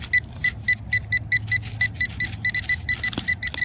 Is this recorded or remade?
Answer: recorded